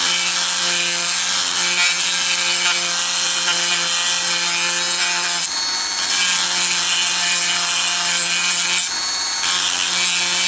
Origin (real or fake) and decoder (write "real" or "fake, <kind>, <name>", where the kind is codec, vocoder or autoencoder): real